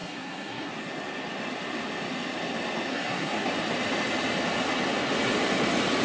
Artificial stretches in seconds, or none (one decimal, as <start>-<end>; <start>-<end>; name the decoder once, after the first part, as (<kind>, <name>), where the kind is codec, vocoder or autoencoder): 0.0-0.7 (codec, SNAC); 2.9-3.5